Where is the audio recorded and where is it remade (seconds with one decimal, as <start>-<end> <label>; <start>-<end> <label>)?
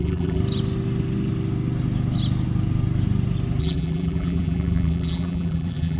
0.0-0.4 remade; 0.4-3.6 recorded; 3.6-6.0 remade